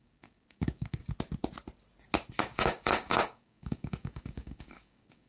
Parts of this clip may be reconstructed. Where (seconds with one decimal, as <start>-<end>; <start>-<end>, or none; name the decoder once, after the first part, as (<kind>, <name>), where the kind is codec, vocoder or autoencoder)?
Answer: 0.0-1.0 (codec, DAC); 2.4-5.3

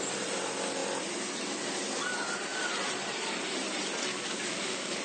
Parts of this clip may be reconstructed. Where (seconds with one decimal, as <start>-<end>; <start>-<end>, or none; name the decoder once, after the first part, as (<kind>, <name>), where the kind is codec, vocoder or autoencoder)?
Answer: 4.1-5.0 (codec, DAC)

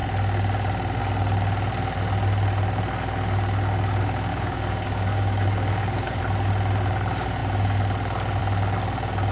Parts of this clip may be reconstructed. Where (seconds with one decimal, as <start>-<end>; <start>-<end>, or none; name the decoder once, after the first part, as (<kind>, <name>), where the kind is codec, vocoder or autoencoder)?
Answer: 4.3-6.2 (codec, DAC)

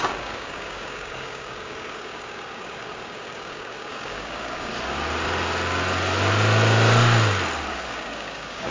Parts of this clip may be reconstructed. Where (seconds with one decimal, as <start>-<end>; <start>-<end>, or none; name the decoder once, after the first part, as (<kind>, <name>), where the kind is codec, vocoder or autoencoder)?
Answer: 0.0-4.7 (codec, DAC); 7.7-8.7